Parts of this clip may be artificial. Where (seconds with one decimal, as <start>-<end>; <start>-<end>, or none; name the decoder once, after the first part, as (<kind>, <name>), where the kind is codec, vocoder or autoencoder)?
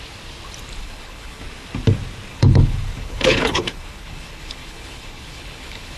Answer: 0.8-1.4 (codec, HILCodec); 2.3-6.0